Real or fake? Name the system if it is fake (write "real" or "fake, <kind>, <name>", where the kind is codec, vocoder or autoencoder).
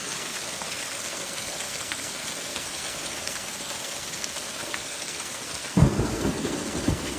fake, codec, SNAC